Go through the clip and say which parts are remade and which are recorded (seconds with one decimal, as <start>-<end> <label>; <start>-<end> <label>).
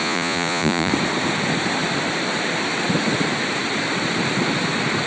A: 0.0-0.9 remade; 0.9-5.1 recorded